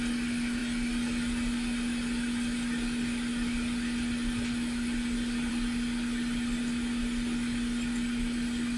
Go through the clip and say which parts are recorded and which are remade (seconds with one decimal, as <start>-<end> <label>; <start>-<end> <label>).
0.0-8.8 recorded